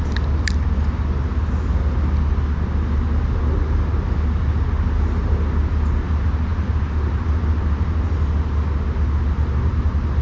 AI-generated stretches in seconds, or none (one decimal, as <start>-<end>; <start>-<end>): none